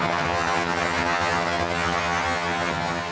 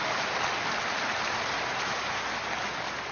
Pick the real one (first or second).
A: second